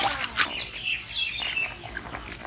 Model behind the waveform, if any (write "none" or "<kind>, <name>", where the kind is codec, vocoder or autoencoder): none